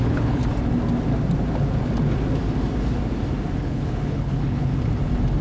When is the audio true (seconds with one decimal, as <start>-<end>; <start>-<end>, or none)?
0.4-3.6; 4.7-5.4